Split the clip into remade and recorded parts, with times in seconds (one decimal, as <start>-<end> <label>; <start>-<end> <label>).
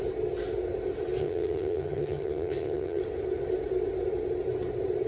0.0-1.2 recorded; 1.2-3.0 remade; 3.0-5.1 recorded